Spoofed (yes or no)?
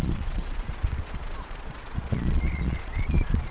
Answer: yes